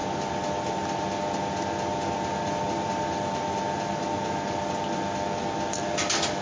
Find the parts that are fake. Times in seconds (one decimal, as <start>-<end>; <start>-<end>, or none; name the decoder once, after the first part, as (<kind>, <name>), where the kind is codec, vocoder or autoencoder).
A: none